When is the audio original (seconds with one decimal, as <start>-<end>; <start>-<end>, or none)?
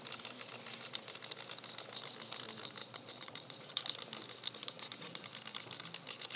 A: 0.0-2.8; 3.8-4.6; 5.2-6.4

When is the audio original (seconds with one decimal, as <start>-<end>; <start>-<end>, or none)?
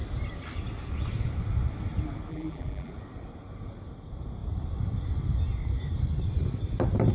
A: 0.0-2.3; 2.9-7.1